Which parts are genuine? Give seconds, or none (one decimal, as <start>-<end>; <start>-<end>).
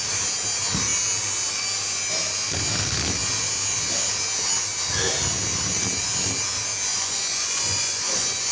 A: 0.0-6.9